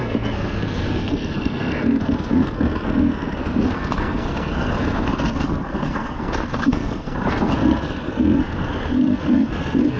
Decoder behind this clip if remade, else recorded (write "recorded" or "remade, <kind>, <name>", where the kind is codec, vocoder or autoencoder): remade, codec, SNAC